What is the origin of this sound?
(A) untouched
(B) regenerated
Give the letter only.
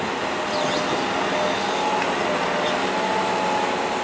A